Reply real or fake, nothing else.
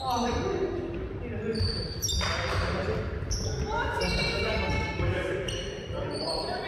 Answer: real